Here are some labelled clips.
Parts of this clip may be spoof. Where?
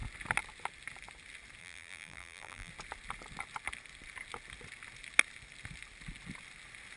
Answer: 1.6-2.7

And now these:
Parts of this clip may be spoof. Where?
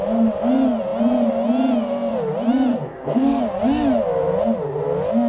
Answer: 2.7-3.4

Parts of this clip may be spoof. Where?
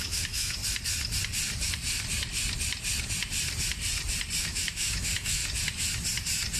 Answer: 0.0-0.6; 4.4-5.4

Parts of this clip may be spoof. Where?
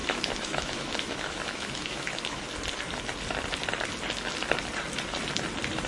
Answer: 0.0-2.4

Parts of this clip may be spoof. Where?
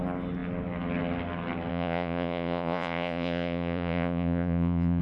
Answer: 1.7-5.0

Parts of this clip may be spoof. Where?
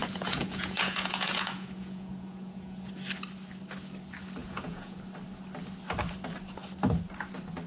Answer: 0.0-2.9; 4.4-5.0